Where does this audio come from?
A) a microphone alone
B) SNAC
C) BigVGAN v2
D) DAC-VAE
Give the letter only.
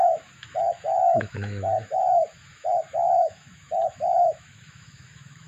D